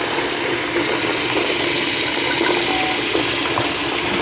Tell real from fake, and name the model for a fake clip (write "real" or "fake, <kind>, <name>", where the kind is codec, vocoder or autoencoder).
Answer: real